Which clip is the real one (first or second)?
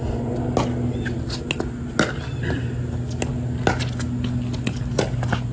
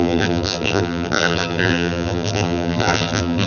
first